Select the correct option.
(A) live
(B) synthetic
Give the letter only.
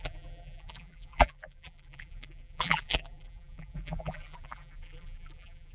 B